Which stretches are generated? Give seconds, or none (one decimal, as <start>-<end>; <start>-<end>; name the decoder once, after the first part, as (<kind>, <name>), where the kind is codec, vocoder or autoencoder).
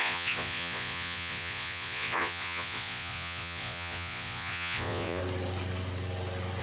0.0-5.2 (vocoder, Vocos)